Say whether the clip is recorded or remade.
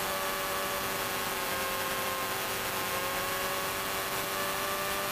recorded